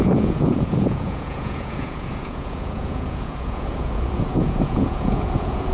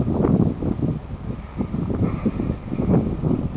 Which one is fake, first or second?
first